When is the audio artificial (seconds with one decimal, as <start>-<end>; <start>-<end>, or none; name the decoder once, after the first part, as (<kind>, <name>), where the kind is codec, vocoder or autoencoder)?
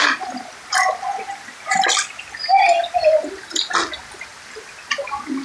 none